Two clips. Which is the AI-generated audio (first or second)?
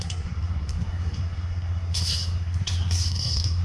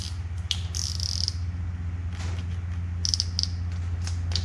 first